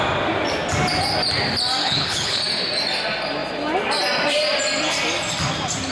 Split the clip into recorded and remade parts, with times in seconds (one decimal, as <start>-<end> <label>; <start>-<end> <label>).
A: 0.0-1.8 recorded; 1.8-2.4 remade; 2.4-5.9 recorded